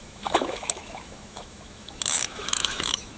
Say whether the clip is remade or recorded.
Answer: remade